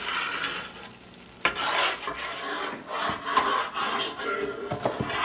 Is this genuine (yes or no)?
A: yes